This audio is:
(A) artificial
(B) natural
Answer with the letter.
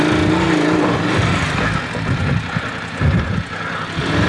B